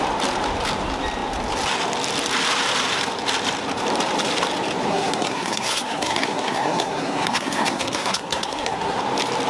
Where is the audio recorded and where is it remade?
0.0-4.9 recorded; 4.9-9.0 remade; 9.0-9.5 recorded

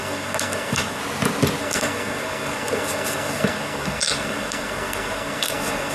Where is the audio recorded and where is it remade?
0.0-1.0 remade; 1.0-1.6 recorded; 1.6-5.9 remade

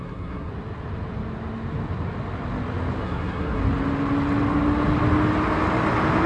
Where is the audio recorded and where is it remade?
0.0-0.5 remade; 0.5-3.0 recorded; 3.0-3.6 remade; 3.6-6.3 recorded

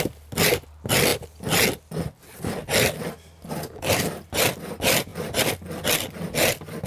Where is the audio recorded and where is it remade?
0.0-6.9 recorded

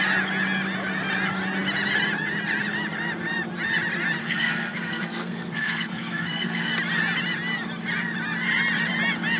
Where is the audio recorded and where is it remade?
0.0-4.2 recorded; 4.2-6.7 remade; 6.7-9.4 recorded

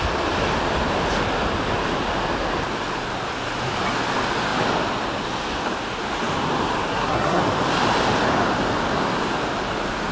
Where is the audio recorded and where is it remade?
0.0-6.9 recorded; 6.9-7.4 remade; 7.4-10.1 recorded

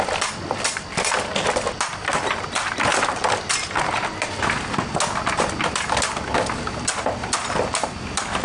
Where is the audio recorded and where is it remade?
0.0-8.4 recorded